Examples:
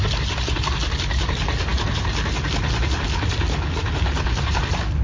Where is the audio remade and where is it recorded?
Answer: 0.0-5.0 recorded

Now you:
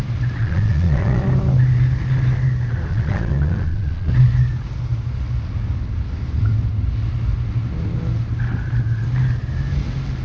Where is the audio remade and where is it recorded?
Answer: 0.0-0.4 recorded; 0.4-1.2 remade; 1.2-2.9 recorded; 2.9-4.1 remade; 4.1-10.2 recorded

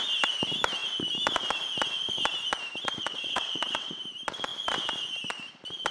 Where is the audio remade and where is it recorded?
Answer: 0.0-3.0 recorded; 3.0-4.0 remade; 4.0-5.9 recorded

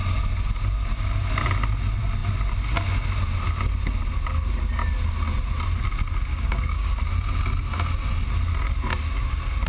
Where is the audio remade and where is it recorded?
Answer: 0.0-6.3 recorded; 6.3-7.0 remade; 7.0-9.7 recorded